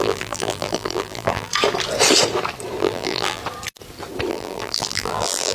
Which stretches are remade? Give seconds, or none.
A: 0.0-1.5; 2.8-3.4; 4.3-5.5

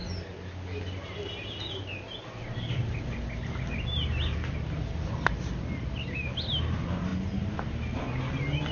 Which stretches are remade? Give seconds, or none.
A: none

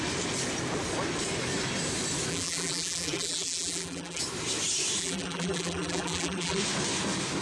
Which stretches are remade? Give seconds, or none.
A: 2.3-4.2; 5.0-6.6

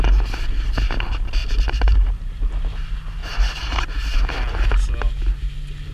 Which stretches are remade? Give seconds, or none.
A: 1.4-2.5; 3.2-4.3

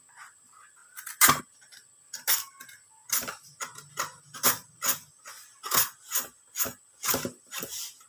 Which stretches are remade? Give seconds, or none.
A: 0.8-1.4

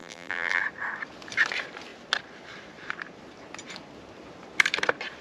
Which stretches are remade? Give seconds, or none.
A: 0.0-0.6